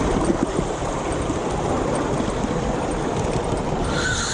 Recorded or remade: recorded